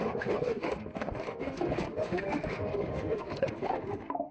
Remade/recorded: remade